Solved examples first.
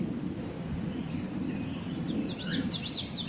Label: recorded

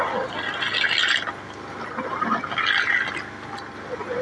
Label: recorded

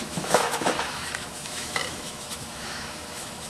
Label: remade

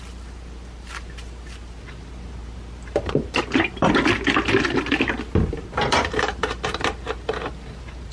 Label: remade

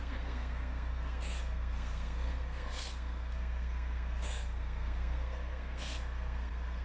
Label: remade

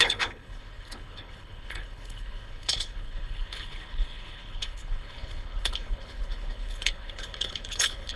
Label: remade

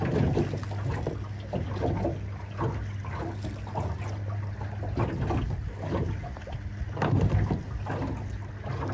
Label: recorded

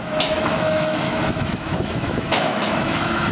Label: remade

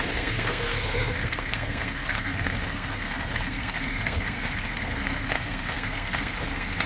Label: remade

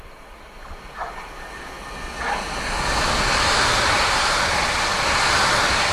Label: recorded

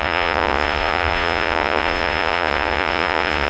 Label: remade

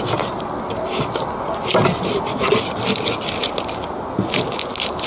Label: recorded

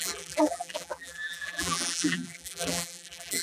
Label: remade